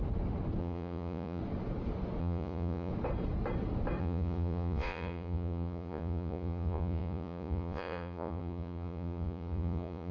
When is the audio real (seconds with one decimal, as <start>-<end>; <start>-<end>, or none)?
0.0-0.6; 1.4-2.2; 2.9-4.0